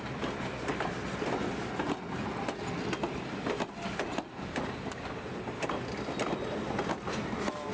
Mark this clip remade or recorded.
recorded